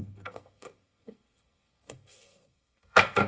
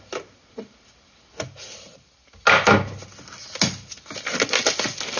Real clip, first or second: second